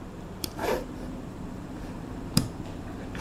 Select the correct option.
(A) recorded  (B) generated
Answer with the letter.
B